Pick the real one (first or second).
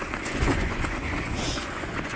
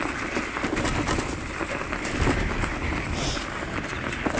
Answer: second